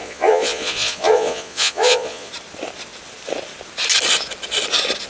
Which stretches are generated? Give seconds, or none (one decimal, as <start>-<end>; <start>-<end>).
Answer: 0.0-2.3